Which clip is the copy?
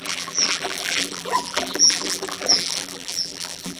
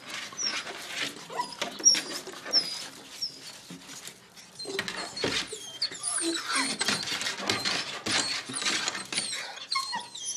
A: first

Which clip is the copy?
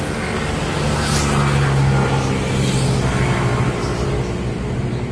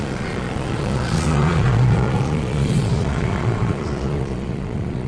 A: second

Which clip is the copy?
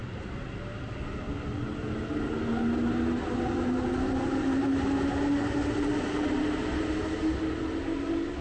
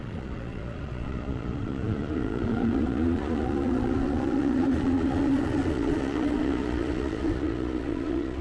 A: second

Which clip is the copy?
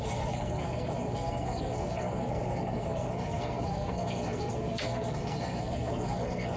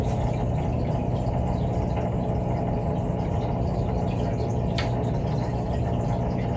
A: first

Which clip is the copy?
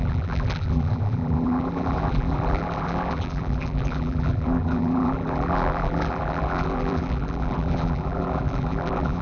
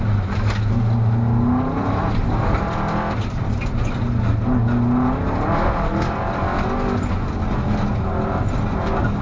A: first